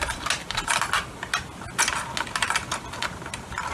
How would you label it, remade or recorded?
recorded